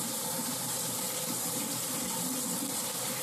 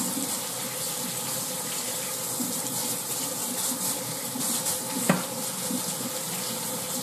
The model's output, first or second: first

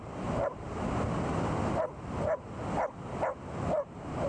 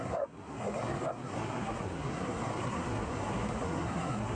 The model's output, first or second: second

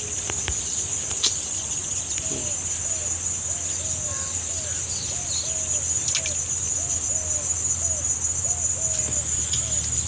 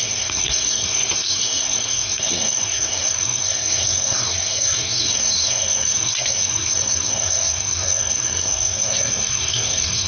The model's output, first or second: second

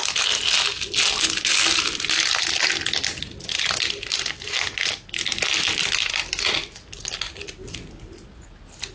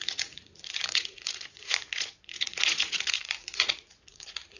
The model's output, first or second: second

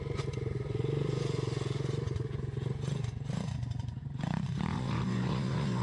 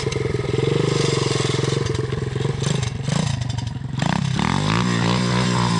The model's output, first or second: first